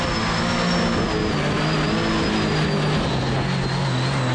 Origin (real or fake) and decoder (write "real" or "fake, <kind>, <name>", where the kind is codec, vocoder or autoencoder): real